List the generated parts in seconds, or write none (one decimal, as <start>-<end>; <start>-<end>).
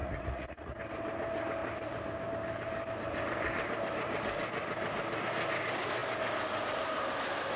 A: 0.0-0.8